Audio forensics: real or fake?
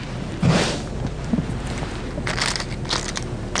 real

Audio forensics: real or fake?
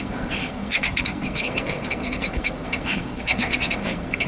fake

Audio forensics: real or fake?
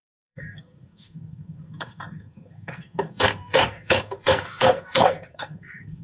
fake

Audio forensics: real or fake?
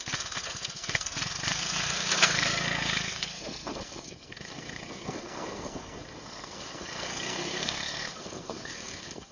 fake